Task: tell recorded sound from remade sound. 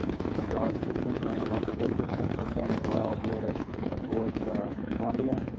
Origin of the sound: remade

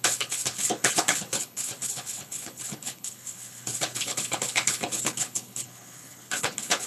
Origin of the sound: remade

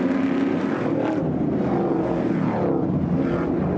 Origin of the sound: recorded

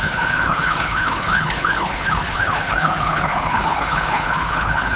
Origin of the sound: remade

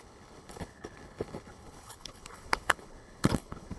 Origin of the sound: remade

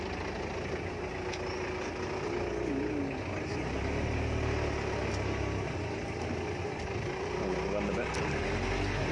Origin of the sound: recorded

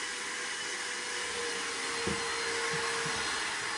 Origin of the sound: recorded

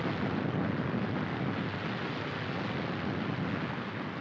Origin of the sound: recorded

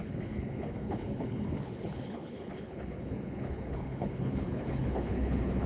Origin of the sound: remade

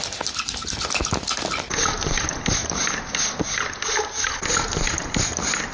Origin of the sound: recorded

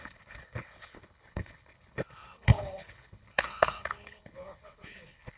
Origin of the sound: remade